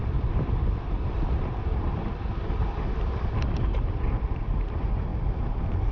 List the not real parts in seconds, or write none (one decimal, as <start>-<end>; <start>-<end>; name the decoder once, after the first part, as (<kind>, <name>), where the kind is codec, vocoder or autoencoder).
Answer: 0.0-5.9 (vocoder, BigVGAN v2)

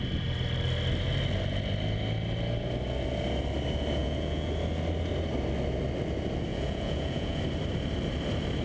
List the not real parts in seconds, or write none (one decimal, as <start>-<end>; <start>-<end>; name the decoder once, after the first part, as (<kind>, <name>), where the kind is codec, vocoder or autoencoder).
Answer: 4.0-4.5 (vocoder, Vocos); 6.5-7.4